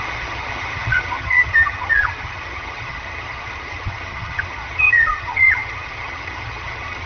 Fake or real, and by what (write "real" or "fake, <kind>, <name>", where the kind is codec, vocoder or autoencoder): fake, vocoder, HiFi-GAN